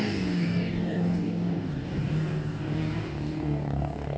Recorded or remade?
remade